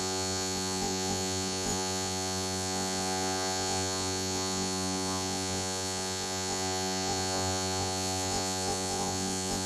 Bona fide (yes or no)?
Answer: no